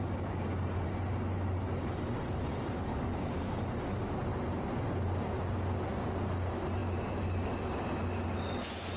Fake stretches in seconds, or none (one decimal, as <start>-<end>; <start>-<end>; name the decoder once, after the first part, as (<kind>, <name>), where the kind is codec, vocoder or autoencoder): 2.9-3.6 (codec, DAC)